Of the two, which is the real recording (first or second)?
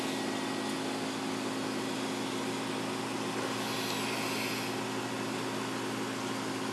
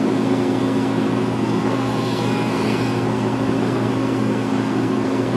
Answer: first